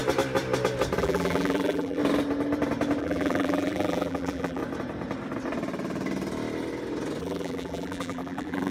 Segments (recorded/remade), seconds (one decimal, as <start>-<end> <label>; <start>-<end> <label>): 0.0-1.0 recorded; 1.0-2.0 remade; 2.0-3.0 recorded; 3.0-4.6 remade; 4.6-7.2 recorded; 7.2-8.7 remade